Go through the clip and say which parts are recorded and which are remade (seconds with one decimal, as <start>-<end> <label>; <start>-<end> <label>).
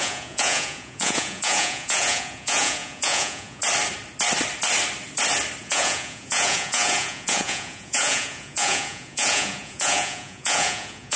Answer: 0.0-3.6 remade; 3.6-5.6 recorded; 5.6-11.2 remade